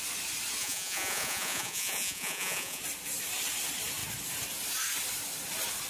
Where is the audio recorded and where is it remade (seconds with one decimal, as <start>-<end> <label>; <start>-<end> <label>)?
0.0-0.6 recorded; 0.6-2.8 remade; 2.8-5.9 recorded